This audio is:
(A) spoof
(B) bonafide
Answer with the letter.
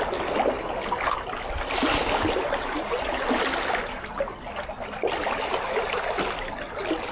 B